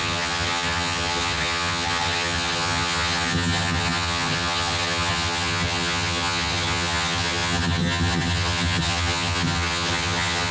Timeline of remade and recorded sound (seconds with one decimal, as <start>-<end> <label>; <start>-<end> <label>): 0.0-10.5 remade